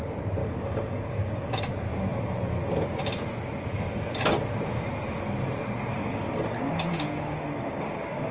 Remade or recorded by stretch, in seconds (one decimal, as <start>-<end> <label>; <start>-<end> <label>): 0.0-0.4 recorded; 0.4-1.6 remade; 1.6-5.9 recorded; 5.9-8.3 remade